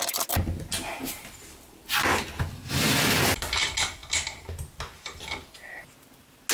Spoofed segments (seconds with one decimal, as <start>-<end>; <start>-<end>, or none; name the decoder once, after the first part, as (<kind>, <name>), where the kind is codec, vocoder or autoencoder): none